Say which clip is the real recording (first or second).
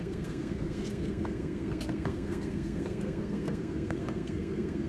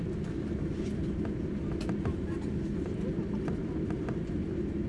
second